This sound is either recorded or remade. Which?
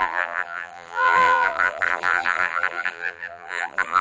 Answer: remade